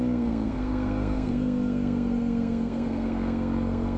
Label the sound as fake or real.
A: fake